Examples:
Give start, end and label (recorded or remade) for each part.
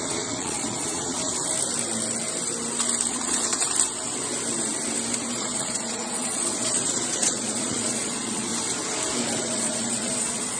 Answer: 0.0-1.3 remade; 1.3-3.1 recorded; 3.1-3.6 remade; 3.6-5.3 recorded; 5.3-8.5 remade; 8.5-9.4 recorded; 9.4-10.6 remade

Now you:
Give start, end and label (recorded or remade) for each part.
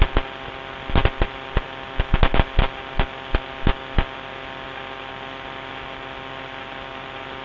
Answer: 0.0-7.4 recorded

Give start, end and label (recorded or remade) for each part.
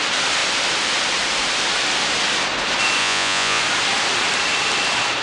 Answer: 0.0-3.0 recorded; 3.0-3.6 remade; 3.6-5.2 recorded